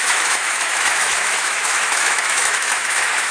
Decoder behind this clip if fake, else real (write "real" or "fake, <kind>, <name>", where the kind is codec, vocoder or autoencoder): fake, autoencoder, DAC-VAE